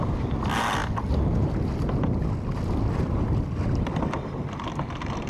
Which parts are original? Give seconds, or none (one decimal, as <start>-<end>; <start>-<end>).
0.0-5.3